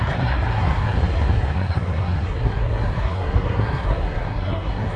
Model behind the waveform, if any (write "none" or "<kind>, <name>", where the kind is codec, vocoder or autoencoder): codec, SNAC